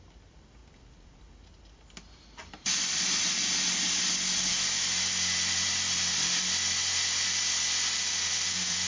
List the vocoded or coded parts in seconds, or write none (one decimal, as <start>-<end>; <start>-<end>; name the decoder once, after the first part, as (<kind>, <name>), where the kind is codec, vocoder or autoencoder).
none